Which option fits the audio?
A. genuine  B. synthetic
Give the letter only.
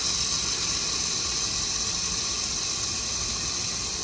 A